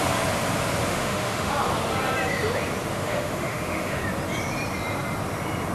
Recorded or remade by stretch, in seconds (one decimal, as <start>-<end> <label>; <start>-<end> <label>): 0.0-0.9 recorded; 0.9-1.5 remade; 1.5-2.9 recorded; 2.9-4.0 remade; 4.0-5.7 recorded